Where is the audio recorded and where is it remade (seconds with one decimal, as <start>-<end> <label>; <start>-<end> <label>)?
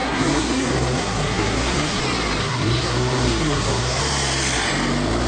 0.0-2.0 remade; 2.0-2.4 recorded; 2.4-4.0 remade; 4.0-5.3 recorded